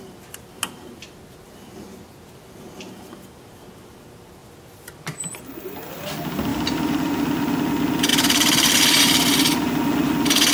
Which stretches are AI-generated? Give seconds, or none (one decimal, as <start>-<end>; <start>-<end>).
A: 6.5-7.1; 8.1-9.7